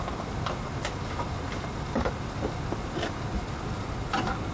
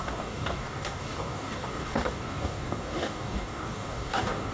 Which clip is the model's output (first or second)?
second